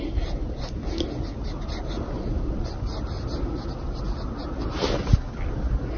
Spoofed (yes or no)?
no